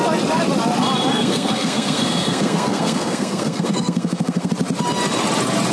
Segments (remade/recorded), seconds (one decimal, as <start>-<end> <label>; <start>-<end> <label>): 0.0-1.1 recorded; 1.1-4.5 remade; 4.5-5.7 recorded